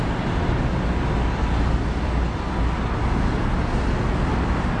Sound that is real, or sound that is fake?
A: real